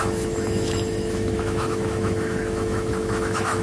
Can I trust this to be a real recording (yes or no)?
no